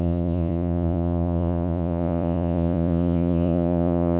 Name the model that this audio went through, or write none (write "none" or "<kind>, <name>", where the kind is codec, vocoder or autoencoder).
vocoder, Vocos